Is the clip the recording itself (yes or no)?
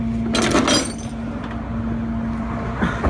yes